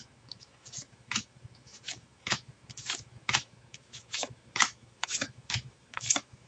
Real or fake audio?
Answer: fake